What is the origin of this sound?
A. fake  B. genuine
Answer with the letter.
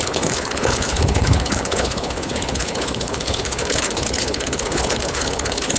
A